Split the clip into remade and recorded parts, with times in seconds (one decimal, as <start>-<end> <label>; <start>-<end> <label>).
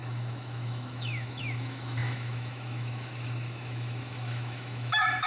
0.0-5.3 remade